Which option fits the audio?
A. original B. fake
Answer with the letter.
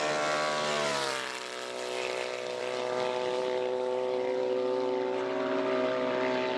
B